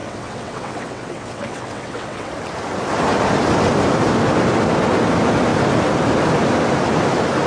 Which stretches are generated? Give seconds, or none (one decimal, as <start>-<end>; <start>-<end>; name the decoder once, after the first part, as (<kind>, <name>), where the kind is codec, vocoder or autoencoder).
0.0-2.3 (vocoder, WaveNeXt)